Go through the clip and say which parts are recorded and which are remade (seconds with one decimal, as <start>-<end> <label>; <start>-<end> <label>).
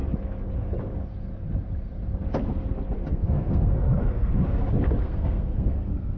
0.0-3.1 recorded; 3.1-4.3 remade; 4.3-5.0 recorded; 5.0-6.2 remade